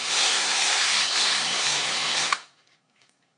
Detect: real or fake fake